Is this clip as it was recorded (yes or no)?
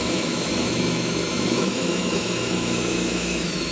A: no